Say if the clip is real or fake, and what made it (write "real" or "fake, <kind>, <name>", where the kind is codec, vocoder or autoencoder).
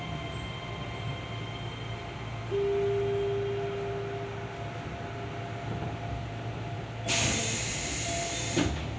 real